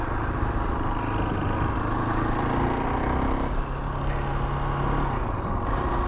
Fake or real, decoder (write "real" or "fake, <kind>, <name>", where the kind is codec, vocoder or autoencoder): real